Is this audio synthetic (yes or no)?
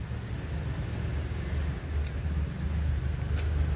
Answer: no